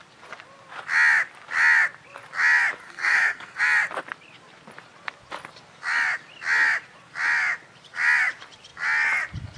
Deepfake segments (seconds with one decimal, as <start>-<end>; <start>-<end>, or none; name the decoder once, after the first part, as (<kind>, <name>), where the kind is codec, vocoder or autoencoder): 2.8-3.6 (codec, SNAC)